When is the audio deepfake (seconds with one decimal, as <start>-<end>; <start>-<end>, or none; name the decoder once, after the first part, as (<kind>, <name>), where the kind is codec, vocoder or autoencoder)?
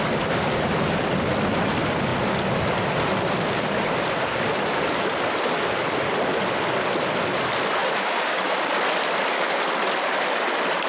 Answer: 7.8-8.7 (codec, DAC)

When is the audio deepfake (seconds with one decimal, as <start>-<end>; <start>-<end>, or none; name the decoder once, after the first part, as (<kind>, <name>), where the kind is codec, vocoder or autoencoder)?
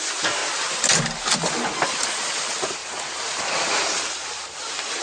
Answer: 0.0-0.4 (vocoder, BigVGAN v2); 2.1-2.8; 3.5-5.0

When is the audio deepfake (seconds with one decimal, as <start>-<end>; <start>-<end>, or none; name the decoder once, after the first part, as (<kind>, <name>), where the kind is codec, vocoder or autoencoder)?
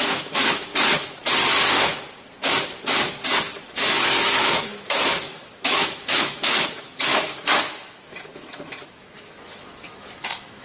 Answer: 0.0-0.7 (autoencoder, DAC-VAE); 3.4-10.6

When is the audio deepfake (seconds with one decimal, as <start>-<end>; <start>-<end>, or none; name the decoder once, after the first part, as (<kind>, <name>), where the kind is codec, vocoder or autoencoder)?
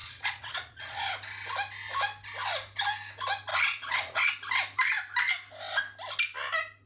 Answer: 0.0-1.0 (vocoder, Vocos); 3.5-4.3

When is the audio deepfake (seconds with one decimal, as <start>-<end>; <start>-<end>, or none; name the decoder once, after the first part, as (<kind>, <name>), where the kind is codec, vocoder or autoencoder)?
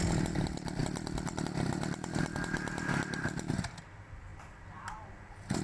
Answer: none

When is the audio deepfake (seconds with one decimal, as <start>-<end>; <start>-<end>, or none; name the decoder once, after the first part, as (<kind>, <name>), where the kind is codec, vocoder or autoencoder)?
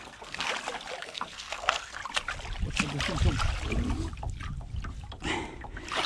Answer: 0.0-0.5 (codec, SNAC); 1.0-2.0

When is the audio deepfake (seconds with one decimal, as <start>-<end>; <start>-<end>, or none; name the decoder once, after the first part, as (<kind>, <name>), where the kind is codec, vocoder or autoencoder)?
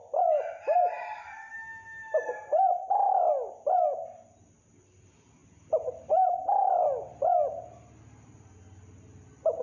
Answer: none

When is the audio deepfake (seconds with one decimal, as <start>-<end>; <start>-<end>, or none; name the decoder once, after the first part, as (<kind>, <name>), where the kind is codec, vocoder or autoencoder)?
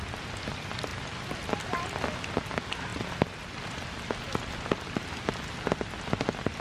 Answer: none